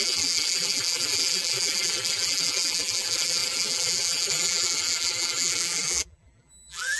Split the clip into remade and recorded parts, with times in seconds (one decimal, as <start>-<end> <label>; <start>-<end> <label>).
0.0-7.0 remade